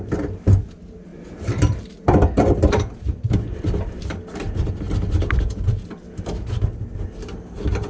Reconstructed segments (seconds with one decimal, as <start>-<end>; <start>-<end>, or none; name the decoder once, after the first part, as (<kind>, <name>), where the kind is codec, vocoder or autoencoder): 1.1-4.7 (vocoder, BigVGAN v2)

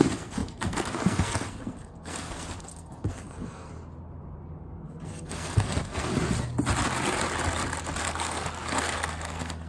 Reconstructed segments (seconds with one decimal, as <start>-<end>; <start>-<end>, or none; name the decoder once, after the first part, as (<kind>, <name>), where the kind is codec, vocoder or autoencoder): 0.0-3.7 (codec, SNAC); 4.6-6.1; 8.0-9.7

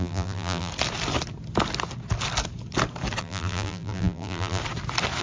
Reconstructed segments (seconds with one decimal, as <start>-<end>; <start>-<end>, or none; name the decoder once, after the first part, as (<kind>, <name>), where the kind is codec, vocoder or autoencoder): 0.0-0.7 (vocoder, BigVGAN v2); 3.2-4.6

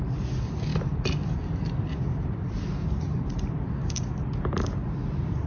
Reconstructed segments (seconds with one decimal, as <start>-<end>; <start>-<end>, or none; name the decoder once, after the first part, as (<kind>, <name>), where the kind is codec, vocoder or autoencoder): 0.7-4.0 (vocoder, BigVGAN v2); 4.8-5.5